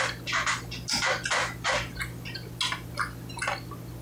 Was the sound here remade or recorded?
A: recorded